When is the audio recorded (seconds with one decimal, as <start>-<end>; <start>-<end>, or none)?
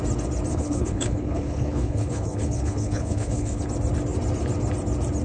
0.0-0.5; 3.6-5.2